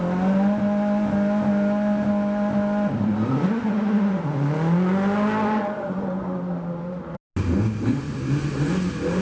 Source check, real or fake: real